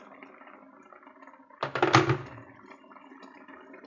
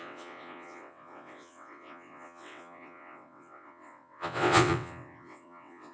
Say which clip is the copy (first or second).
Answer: second